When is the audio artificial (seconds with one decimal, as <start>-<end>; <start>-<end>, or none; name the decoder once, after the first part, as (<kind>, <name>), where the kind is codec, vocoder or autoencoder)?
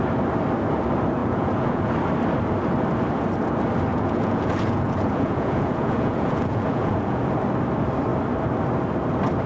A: 1.2-1.9 (vocoder, Vocos); 3.9-7.3